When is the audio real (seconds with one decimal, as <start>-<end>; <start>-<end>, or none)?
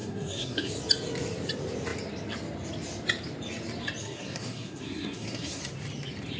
0.7-4.0; 5.6-6.4